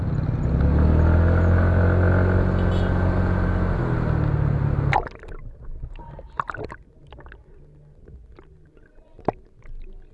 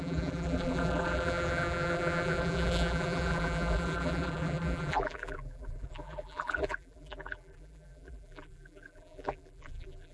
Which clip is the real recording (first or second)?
first